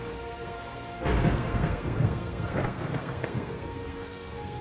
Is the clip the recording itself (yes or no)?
no